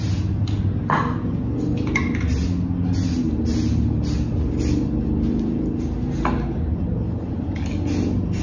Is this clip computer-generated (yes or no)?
no